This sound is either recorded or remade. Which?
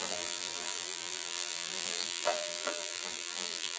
remade